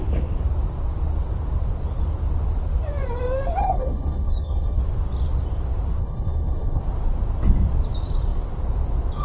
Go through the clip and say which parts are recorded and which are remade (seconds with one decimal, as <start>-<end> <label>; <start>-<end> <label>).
0.0-3.6 recorded; 3.6-4.8 remade; 4.8-6.0 recorded; 6.0-6.8 remade; 6.8-9.2 recorded